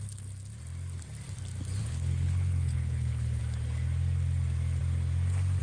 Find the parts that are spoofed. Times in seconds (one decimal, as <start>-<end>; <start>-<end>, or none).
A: 1.8-3.4